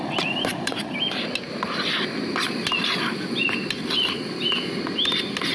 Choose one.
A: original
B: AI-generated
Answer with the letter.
A